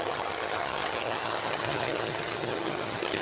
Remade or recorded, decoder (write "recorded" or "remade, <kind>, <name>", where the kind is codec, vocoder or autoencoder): remade, vocoder, HiFi-GAN